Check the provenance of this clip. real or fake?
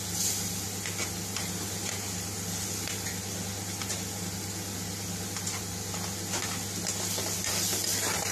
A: real